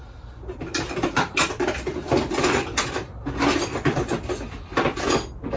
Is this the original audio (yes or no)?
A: yes